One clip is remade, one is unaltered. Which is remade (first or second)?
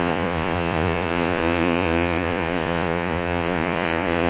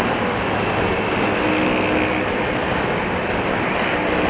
first